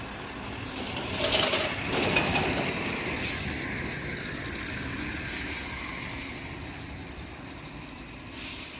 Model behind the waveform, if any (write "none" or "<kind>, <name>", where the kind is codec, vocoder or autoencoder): none